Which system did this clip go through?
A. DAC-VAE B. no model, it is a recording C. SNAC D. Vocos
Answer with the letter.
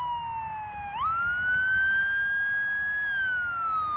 B